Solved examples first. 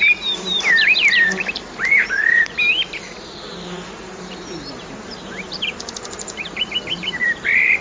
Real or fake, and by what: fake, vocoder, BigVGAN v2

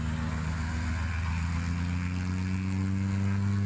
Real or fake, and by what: real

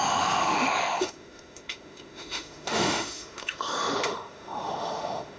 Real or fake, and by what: fake, autoencoder, DAC-VAE